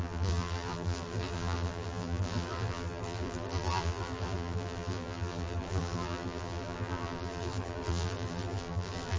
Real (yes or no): no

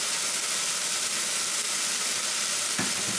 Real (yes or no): yes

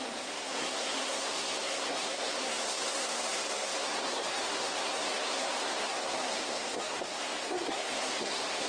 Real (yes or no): no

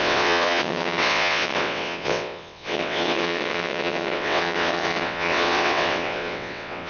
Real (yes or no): no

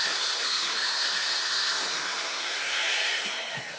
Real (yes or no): no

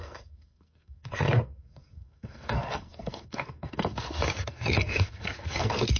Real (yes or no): no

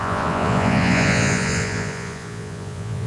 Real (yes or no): no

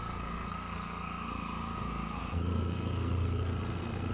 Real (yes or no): no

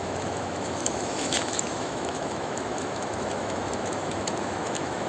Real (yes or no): no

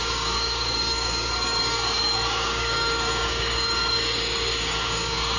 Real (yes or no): no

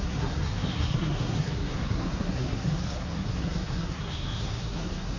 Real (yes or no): no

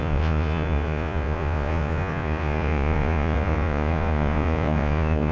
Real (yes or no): no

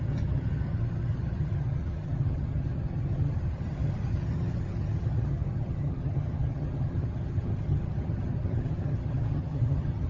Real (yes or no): no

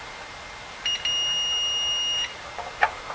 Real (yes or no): yes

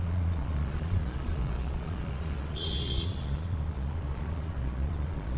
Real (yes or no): no